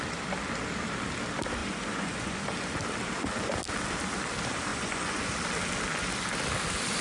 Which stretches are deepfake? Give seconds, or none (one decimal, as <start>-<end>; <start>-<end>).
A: 1.6-2.4; 4.7-5.3